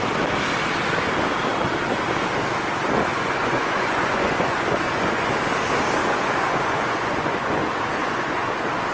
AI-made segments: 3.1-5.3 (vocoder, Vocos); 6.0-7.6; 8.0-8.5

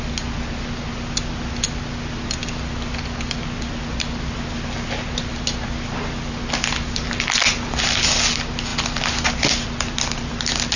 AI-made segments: none